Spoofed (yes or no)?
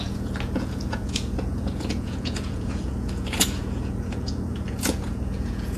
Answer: yes